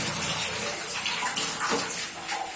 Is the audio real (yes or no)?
yes